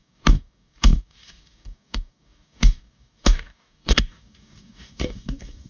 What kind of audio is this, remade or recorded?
remade